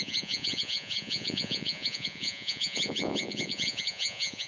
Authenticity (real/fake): fake